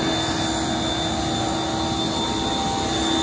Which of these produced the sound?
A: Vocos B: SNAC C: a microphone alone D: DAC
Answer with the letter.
C